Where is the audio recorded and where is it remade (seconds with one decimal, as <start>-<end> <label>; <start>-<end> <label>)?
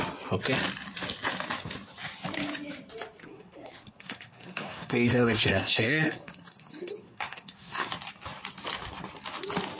0.0-3.2 recorded; 3.2-7.9 remade; 7.9-9.8 recorded